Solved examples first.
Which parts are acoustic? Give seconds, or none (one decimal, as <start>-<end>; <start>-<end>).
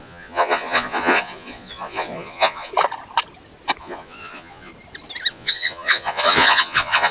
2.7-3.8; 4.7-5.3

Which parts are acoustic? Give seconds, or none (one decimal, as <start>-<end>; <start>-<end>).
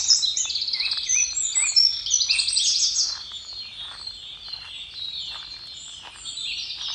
0.0-6.9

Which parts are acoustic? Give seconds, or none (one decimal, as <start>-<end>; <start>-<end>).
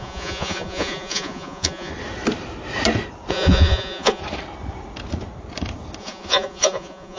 1.9-3.3; 4.2-6.0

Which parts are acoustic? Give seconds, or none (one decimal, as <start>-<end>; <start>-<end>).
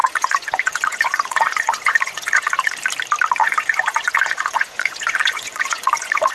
2.7-3.4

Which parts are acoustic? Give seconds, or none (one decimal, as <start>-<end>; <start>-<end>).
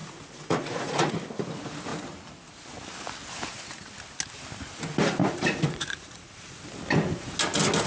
1.1-5.2; 6.6-7.9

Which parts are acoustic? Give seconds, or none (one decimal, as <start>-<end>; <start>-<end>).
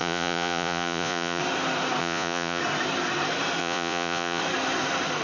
1.4-2.0; 2.6-3.6; 4.4-5.2